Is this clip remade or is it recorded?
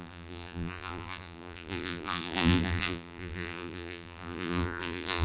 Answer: remade